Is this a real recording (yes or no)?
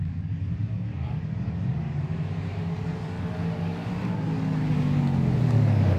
no